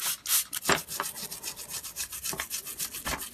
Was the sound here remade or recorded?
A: recorded